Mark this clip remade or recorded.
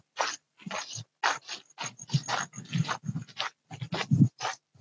recorded